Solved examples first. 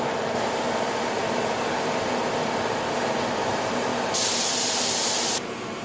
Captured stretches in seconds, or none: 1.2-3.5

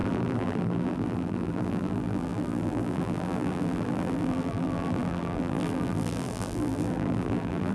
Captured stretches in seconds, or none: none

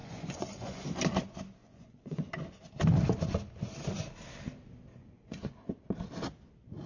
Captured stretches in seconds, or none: 0.8-1.6; 2.3-5.0; 5.7-6.9

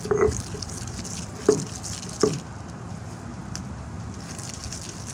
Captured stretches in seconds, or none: 0.0-5.1

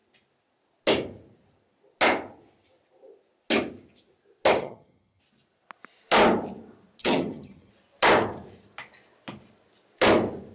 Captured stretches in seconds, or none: 0.0-4.6; 5.2-7.0; 7.7-10.5

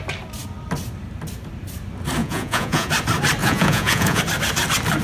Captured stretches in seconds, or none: 0.0-2.2; 2.9-3.4; 4.2-5.0

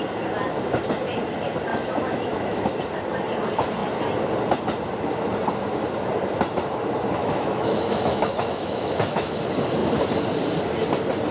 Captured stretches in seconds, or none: 0.0-1.7; 2.8-7.2; 9.4-11.3

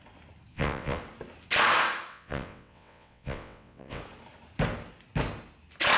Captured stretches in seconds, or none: 0.0-0.5; 1.0-2.1; 4.0-6.0